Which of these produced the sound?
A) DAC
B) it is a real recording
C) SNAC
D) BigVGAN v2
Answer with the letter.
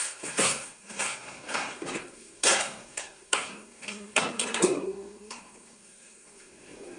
C